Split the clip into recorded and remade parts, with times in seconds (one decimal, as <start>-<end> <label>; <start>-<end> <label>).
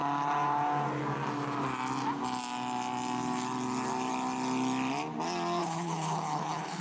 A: 0.0-5.6 recorded; 5.6-6.8 remade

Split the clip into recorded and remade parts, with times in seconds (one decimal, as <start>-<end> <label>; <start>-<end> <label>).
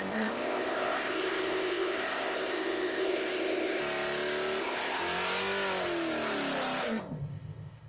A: 0.0-3.8 remade; 3.8-4.6 recorded; 4.6-5.0 remade; 5.0-6.8 recorded; 6.8-7.9 remade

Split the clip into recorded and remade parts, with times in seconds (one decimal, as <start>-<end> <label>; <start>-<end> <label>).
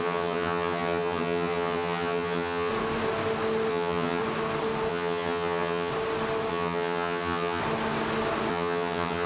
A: 0.0-2.7 remade; 2.7-3.7 recorded; 3.7-4.2 remade; 4.2-4.9 recorded; 4.9-5.9 remade; 5.9-6.5 recorded; 6.5-7.6 remade; 7.6-8.5 recorded; 8.5-9.3 remade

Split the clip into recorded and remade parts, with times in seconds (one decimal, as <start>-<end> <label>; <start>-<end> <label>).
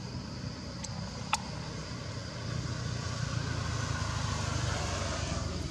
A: 0.0-5.7 recorded